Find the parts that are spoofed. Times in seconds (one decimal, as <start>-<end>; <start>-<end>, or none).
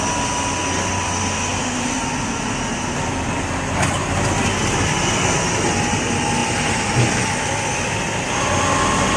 none